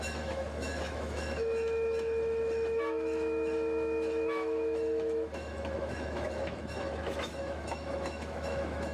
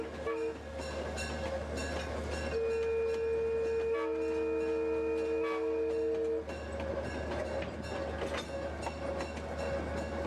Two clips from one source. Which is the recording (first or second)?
second